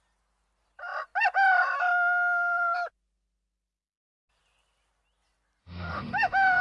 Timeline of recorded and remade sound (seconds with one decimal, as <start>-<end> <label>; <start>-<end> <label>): 0.0-5.6 recorded; 5.6-6.6 remade